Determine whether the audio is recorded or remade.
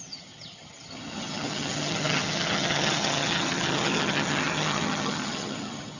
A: remade